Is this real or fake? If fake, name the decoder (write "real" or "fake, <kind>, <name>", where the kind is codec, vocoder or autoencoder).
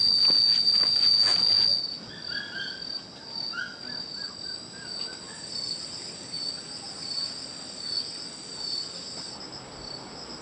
real